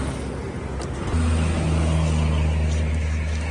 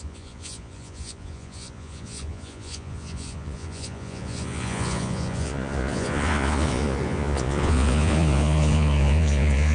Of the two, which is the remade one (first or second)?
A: second